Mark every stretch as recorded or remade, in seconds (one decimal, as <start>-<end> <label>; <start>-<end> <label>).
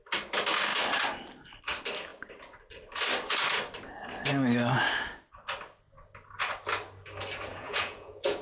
0.0-7.5 recorded; 7.5-8.4 remade